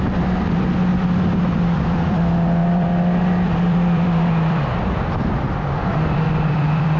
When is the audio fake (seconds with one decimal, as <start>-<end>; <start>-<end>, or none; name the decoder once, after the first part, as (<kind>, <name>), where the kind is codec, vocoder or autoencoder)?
0.9-2.1 (vocoder, BigVGAN v2); 2.6-7.0